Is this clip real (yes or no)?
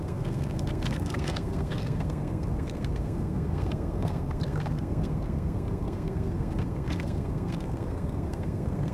no